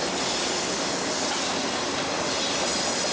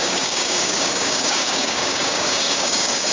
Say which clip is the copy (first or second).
second